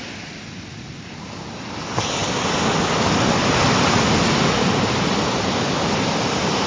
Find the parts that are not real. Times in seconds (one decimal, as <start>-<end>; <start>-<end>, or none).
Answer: none